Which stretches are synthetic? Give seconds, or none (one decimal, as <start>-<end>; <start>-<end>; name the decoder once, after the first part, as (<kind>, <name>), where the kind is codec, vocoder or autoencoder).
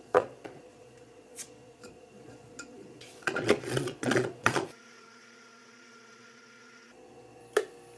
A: 0.0-7.4 (vocoder, Vocos)